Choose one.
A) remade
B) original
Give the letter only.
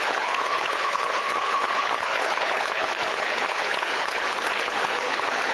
A